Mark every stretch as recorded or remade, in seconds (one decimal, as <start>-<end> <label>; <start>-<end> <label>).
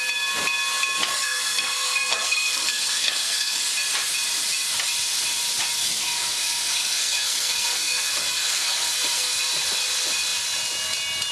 0.0-1.1 recorded; 1.1-3.6 remade; 3.6-5.8 recorded; 5.8-9.4 remade; 9.4-11.3 recorded